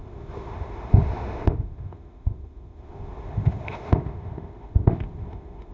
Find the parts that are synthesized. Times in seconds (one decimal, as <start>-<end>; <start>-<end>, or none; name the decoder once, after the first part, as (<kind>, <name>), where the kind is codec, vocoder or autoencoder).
0.0-5.7 (autoencoder, DAC-VAE)